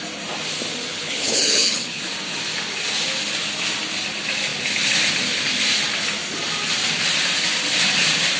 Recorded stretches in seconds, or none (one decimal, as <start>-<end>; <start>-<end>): 0.0-0.9; 2.0-8.4